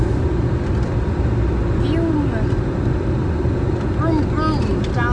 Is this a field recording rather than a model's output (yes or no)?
yes